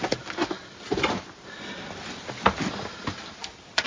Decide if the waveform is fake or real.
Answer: real